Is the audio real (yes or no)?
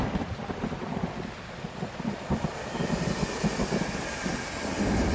yes